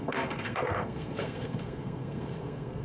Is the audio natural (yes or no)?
no